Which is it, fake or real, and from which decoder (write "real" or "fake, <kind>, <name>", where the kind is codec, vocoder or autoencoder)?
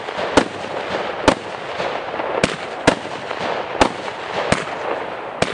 real